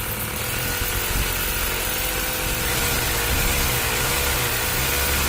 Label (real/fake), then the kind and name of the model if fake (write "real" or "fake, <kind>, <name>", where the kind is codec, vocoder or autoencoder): real